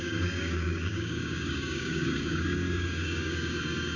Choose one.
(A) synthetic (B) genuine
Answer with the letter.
A